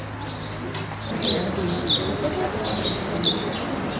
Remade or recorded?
recorded